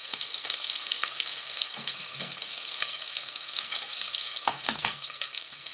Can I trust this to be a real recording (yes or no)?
no